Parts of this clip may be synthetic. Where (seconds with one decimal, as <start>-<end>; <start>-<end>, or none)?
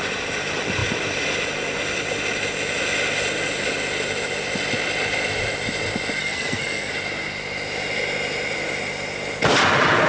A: 6.2-6.9